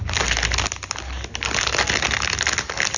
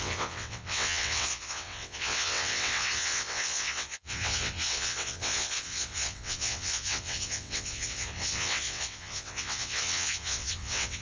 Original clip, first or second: first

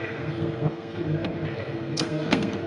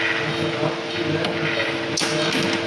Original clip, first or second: second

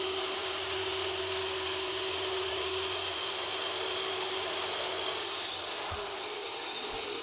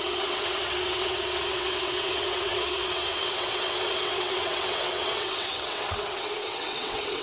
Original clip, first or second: first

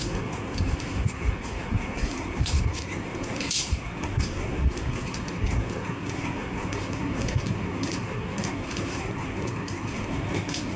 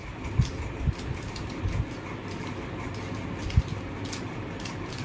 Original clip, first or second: second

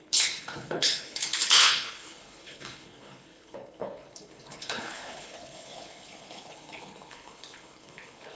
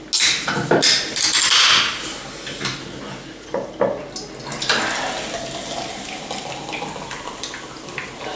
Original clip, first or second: second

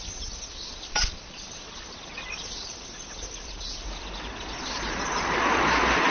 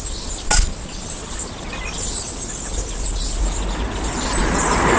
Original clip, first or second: second